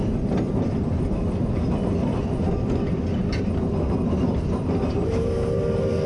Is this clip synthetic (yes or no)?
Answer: no